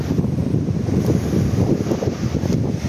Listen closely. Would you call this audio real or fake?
real